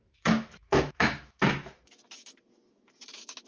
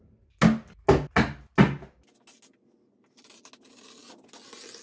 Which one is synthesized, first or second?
first